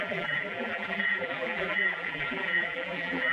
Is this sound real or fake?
fake